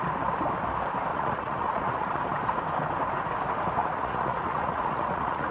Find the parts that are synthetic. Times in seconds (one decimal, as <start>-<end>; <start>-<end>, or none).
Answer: 1.1-2.2; 3.8-5.5